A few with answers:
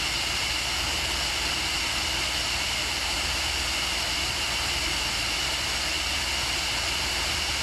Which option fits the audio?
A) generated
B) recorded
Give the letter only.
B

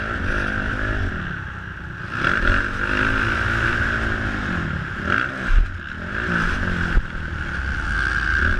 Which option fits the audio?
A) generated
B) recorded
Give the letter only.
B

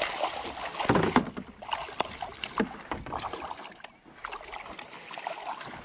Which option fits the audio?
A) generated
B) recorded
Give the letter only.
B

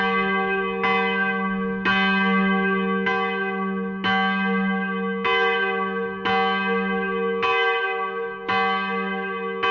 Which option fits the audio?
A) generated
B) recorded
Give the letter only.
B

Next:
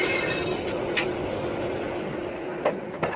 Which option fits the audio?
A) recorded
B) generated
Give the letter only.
A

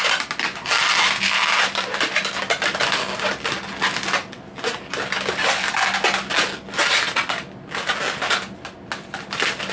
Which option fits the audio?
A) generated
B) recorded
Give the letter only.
B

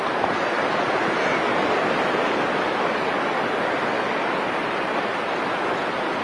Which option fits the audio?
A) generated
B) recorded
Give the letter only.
B